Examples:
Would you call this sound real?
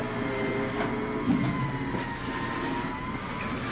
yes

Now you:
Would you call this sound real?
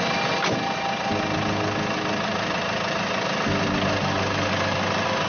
yes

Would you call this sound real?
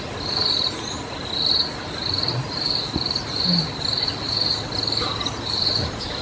yes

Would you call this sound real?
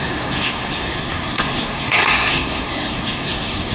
no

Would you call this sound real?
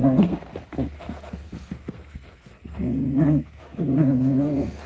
no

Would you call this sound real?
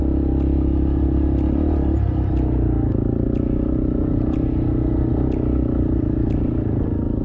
yes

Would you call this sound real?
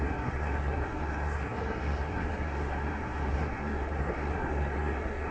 no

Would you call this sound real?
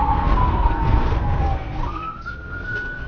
no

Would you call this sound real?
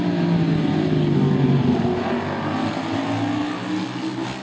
yes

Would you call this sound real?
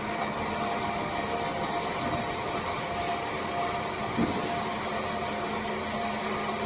yes